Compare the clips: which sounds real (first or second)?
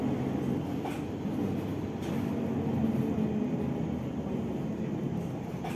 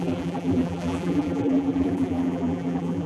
first